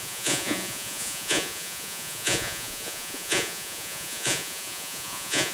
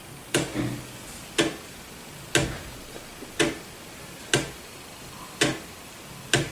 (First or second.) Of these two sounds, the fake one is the first